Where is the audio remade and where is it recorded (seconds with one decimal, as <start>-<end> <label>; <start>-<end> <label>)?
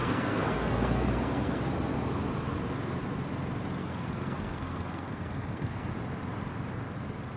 0.0-1.6 remade; 1.6-3.8 recorded; 3.8-5.9 remade; 5.9-7.4 recorded